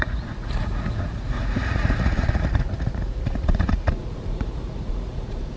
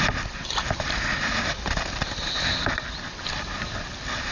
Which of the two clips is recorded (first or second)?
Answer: second